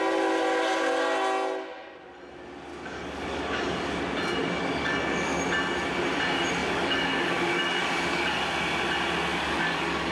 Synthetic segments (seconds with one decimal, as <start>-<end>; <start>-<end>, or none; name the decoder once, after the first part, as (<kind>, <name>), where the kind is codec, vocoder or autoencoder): 2.7-4.0 (codec, DAC); 4.4-5.4; 6.6-8.4; 9.3-10.1